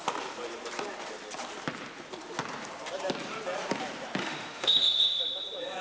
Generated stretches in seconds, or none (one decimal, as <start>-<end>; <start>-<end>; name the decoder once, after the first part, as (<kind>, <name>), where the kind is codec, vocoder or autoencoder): 4.2-5.2 (autoencoder, DAC-VAE)